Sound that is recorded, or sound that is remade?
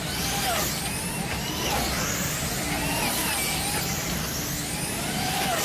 recorded